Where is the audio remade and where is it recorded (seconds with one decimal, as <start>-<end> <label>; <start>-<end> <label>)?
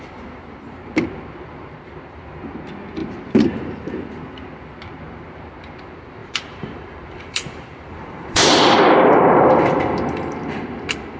0.0-3.0 recorded; 3.0-4.0 remade; 4.0-6.2 recorded; 6.2-9.7 remade; 9.7-11.2 recorded